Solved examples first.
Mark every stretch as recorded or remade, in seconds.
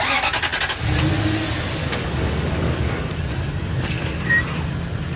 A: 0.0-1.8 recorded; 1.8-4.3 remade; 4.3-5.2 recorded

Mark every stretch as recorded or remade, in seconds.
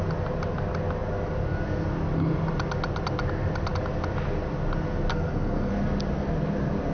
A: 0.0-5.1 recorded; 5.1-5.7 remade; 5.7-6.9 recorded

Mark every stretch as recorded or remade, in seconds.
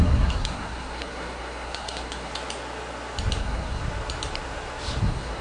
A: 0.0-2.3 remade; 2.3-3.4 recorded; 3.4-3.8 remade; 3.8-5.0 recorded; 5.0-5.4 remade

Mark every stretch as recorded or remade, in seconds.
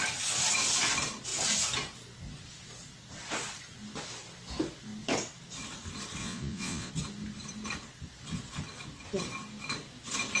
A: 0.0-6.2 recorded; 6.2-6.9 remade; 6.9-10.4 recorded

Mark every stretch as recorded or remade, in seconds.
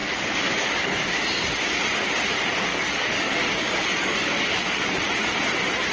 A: 0.0-1.1 remade; 1.1-2.7 recorded; 2.7-5.0 remade; 5.0-5.9 recorded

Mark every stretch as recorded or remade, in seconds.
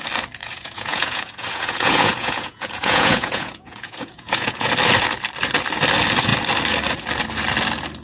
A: 0.0-0.4 recorded; 0.4-4.7 remade; 4.7-8.0 recorded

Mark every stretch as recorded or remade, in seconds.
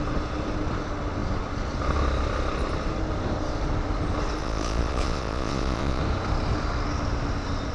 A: 0.0-4.4 recorded; 4.4-6.0 remade; 6.0-7.7 recorded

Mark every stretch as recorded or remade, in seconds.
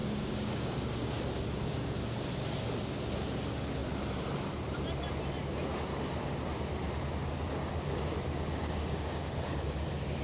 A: 0.0-1.2 remade; 1.2-8.6 recorded; 8.6-9.3 remade; 9.3-10.2 recorded